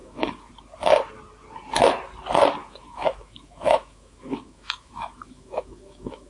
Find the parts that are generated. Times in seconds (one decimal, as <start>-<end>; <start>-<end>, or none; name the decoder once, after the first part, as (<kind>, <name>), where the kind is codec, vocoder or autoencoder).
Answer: 0.0-0.5 (autoencoder, DAC-VAE); 2.6-6.3